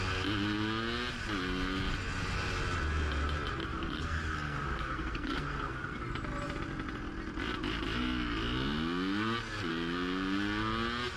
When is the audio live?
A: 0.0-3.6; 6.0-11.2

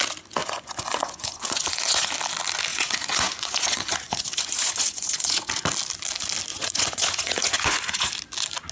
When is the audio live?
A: 0.0-0.4; 2.1-2.7; 5.5-6.5; 8.1-8.7